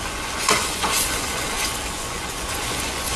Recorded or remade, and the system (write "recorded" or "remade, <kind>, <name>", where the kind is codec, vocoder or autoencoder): remade, vocoder, Vocos